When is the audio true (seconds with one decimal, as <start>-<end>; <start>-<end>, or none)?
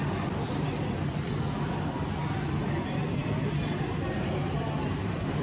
0.0-5.4